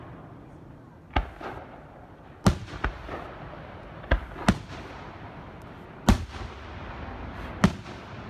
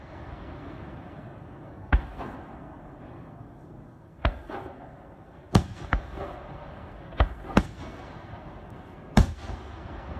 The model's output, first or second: second